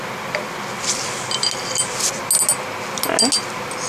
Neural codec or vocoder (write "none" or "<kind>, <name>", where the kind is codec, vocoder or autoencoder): none